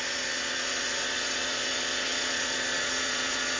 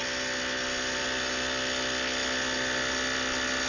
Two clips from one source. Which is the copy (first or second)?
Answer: first